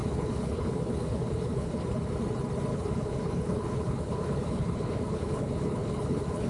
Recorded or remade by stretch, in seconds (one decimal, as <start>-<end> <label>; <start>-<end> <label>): 0.0-1.8 remade; 1.8-2.7 recorded; 2.7-6.5 remade